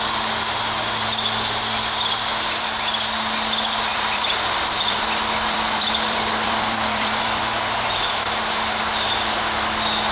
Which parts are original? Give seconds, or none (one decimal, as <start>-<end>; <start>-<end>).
0.0-3.9; 8.1-10.1